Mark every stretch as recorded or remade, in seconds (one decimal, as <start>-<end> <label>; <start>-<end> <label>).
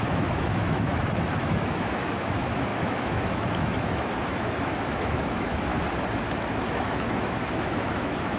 0.0-5.7 remade; 5.7-6.3 recorded; 6.3-8.4 remade